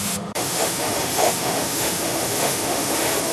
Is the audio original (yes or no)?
no